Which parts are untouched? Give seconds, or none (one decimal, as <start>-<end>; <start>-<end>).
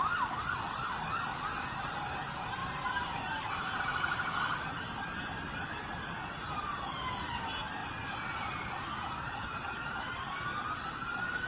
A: 0.0-11.5